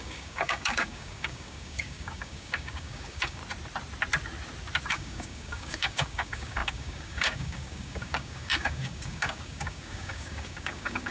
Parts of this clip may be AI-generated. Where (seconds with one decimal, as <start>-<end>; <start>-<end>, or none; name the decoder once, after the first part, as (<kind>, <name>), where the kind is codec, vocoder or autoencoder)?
0.0-3.4 (codec, DAC); 4.9-11.1

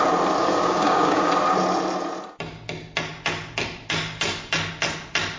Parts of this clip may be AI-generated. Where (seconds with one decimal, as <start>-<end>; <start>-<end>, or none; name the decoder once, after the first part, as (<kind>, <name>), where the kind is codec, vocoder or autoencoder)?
0.4-1.3 (codec, DAC)